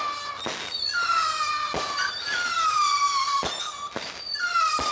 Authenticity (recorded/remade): recorded